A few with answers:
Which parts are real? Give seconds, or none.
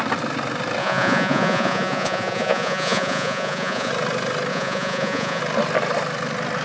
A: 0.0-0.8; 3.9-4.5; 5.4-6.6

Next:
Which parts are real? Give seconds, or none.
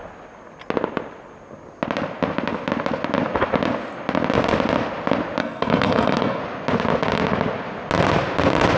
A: 0.0-5.4; 6.4-8.8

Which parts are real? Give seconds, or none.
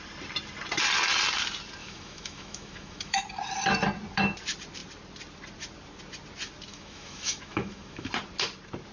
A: 0.0-1.8; 3.2-6.7; 8.1-8.9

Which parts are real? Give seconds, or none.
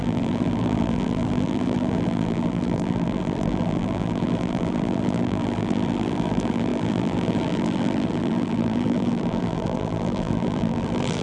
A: none